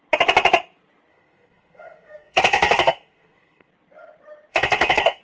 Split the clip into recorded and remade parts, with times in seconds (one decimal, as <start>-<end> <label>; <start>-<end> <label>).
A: 0.0-1.1 recorded; 1.1-3.7 remade; 3.7-4.5 recorded; 4.5-5.2 remade